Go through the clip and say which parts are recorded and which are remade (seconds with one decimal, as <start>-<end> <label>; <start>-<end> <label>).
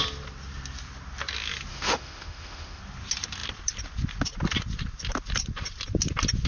0.0-1.7 recorded; 1.7-2.8 remade; 2.8-6.5 recorded